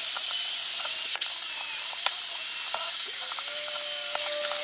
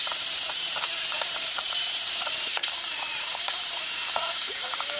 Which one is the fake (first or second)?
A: second